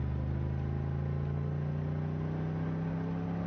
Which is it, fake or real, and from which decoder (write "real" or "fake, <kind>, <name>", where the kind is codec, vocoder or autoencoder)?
real